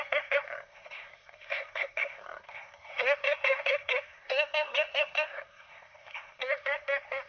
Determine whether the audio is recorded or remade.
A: remade